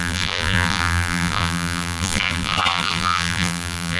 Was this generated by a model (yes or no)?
yes